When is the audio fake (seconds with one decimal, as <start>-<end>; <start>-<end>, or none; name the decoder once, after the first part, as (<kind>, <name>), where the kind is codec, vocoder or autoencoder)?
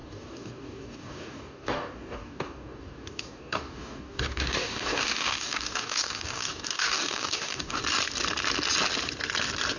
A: 0.0-7.8 (codec, DAC)